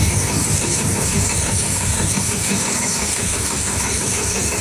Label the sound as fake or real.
fake